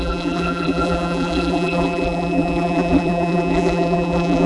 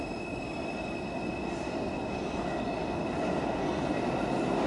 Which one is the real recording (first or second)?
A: second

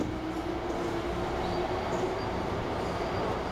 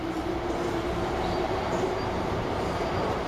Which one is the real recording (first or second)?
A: first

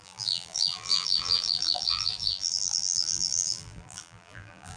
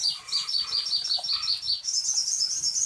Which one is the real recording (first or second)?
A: second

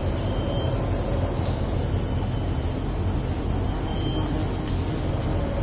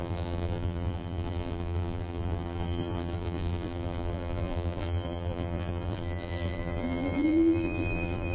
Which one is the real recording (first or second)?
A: first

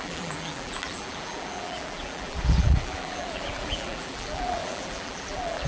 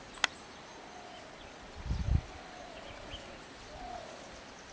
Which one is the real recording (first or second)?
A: second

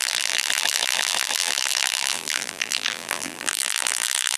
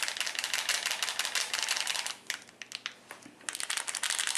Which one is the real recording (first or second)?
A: second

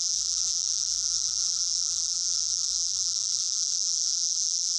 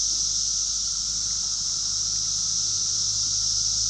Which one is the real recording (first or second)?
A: second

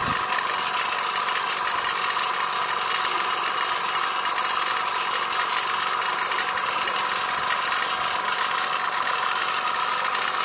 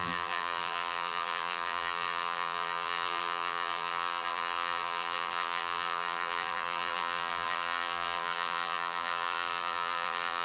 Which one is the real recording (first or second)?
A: first